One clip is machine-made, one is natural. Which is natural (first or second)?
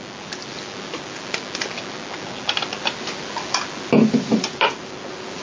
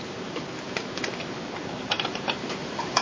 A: first